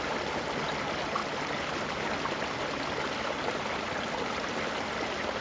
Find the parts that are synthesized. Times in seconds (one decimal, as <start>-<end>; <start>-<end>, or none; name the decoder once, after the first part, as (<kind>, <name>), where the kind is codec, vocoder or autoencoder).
none